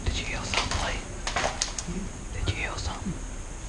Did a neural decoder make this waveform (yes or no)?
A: no